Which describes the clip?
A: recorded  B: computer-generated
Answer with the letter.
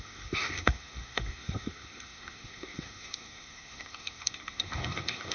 B